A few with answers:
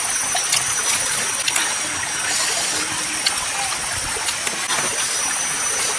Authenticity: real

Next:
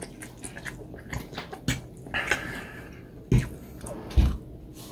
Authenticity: real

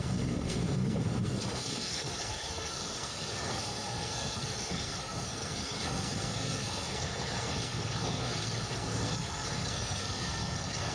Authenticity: fake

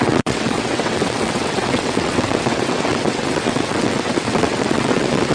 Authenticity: fake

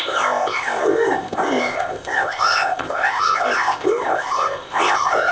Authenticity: fake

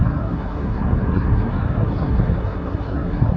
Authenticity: fake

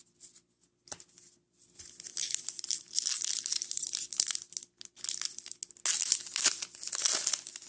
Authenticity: real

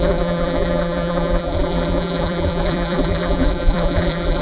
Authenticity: fake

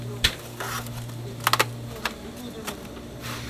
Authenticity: real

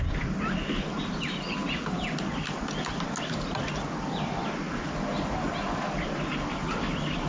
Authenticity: real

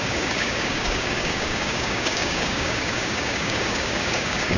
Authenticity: fake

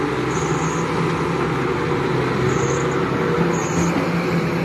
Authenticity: real